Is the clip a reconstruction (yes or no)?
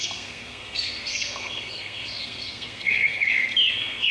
yes